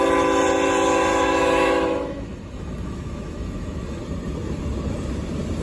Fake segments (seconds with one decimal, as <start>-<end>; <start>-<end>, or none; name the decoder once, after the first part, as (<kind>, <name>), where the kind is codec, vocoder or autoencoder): 1.1-4.0 (autoencoder, DAC-VAE)